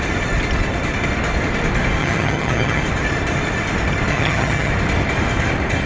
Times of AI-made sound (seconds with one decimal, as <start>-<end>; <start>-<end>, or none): 2.0-2.8; 4.1-4.7